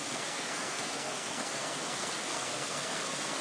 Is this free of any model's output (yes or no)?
no